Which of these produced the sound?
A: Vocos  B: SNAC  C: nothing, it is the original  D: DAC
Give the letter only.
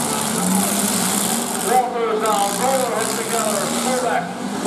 C